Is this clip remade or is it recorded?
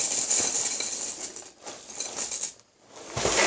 recorded